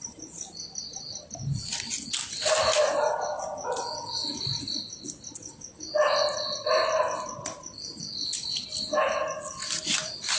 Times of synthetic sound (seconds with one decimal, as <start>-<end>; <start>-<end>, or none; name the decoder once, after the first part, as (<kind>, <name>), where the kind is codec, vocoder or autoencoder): none